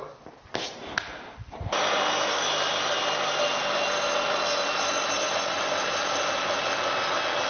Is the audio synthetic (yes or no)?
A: no